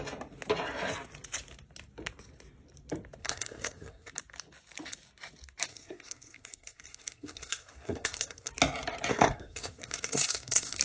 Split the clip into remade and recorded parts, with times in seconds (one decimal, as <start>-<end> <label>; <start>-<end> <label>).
0.0-3.2 recorded; 3.2-4.1 remade; 4.1-5.7 recorded; 5.7-8.5 remade; 8.5-9.1 recorded; 9.1-10.8 remade